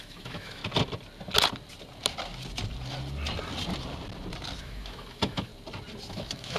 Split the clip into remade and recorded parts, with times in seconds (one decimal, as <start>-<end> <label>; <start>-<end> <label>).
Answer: 0.0-0.6 remade; 0.6-4.6 recorded; 4.6-5.5 remade; 5.5-6.1 recorded; 6.1-6.6 remade